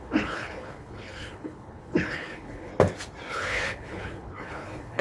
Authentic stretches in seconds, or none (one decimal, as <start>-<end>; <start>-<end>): 2.7-3.3